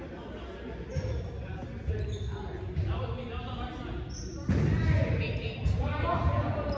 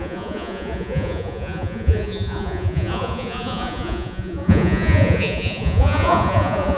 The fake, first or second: second